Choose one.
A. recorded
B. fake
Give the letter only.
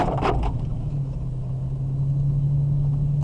A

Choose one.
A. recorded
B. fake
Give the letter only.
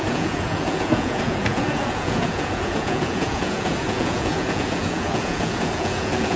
B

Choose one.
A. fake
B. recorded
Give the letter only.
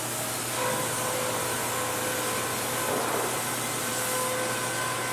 B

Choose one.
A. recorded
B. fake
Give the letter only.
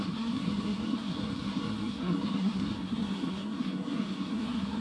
B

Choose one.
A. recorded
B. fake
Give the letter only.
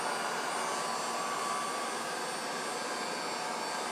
A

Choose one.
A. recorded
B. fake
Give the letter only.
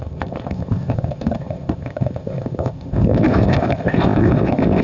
B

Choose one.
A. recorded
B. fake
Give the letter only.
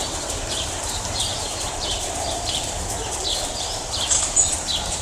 B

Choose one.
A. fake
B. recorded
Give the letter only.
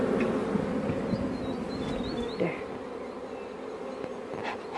B